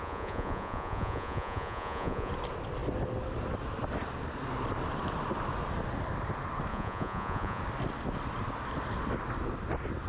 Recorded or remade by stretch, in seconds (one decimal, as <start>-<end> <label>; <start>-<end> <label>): 0.0-2.3 remade; 2.3-6.7 recorded; 6.7-7.6 remade; 7.6-10.1 recorded